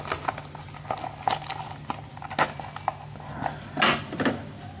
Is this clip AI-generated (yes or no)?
no